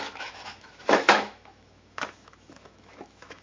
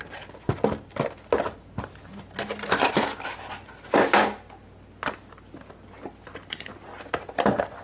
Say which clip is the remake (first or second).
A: first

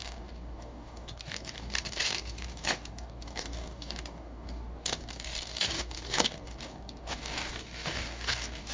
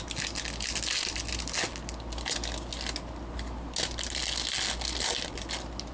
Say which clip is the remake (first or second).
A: first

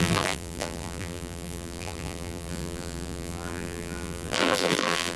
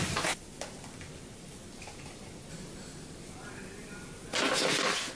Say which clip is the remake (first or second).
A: first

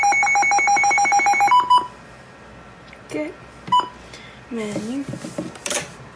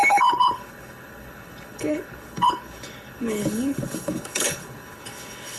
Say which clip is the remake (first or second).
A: second